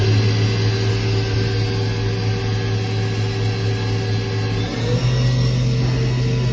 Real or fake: real